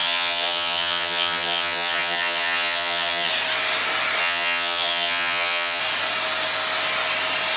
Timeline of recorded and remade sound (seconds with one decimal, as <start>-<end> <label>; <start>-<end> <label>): 0.0-3.3 remade; 3.3-4.2 recorded; 4.2-5.8 remade; 5.8-7.6 recorded